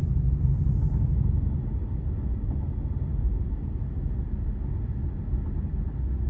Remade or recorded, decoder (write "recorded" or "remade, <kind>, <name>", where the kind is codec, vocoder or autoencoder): recorded